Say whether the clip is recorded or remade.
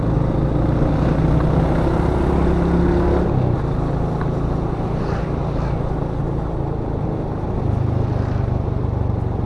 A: recorded